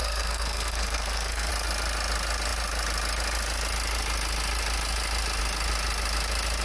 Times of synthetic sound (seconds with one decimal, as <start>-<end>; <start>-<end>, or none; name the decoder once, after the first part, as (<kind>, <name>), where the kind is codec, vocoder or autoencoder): 0.0-1.5 (codec, SNAC)